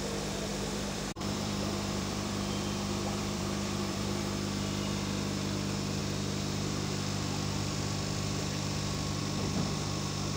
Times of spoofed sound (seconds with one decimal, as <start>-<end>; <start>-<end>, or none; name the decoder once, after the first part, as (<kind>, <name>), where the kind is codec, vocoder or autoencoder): 0.5-4.2 (vocoder, BigVGAN v2)